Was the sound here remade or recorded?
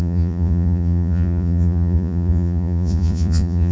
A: remade